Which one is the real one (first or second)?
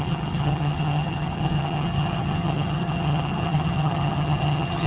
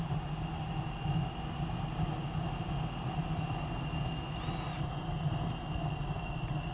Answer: second